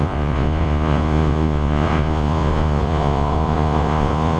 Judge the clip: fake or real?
fake